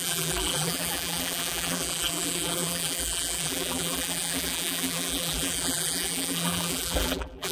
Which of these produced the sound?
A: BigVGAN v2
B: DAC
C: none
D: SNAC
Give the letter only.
A